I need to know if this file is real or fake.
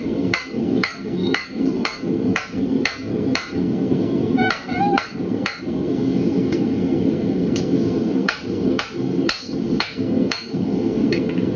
fake